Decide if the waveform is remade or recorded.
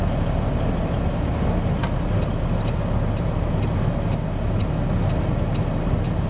recorded